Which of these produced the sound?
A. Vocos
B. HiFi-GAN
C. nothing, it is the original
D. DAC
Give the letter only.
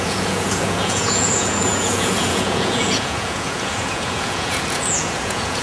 A